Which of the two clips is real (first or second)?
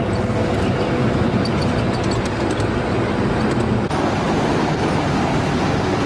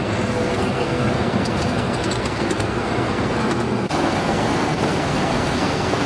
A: first